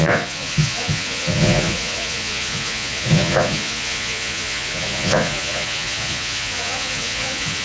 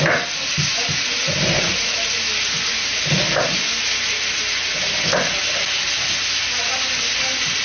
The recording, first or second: second